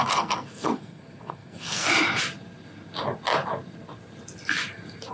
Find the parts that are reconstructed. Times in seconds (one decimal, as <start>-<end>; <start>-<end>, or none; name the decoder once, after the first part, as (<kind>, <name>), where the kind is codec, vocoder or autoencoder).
0.0-1.9 (codec, SNAC)